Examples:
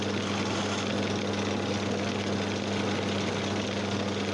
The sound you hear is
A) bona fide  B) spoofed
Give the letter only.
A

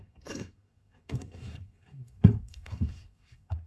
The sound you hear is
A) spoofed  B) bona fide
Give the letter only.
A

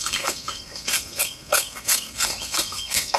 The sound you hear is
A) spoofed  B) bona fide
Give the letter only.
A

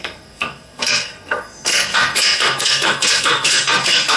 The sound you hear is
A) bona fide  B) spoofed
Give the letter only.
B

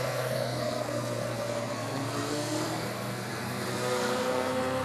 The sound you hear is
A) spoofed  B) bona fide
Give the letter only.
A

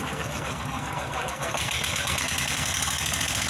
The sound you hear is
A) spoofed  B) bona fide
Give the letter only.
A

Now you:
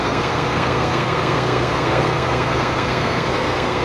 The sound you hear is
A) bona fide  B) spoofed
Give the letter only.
B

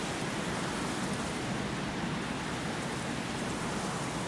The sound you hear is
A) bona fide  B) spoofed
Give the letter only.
A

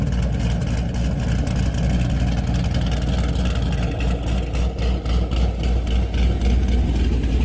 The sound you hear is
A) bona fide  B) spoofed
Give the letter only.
A